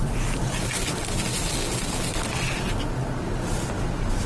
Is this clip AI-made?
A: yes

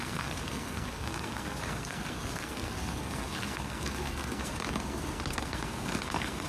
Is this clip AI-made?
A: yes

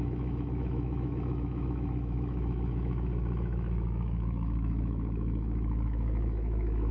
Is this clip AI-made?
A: yes